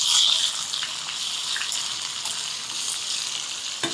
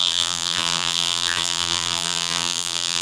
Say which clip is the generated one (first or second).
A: second